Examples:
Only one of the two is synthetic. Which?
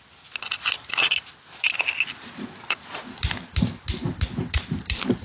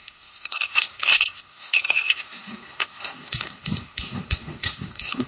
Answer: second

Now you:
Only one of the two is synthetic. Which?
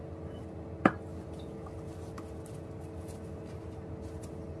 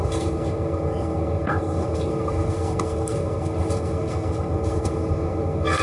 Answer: second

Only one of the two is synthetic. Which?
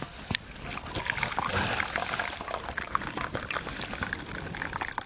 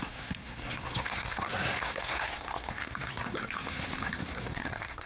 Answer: second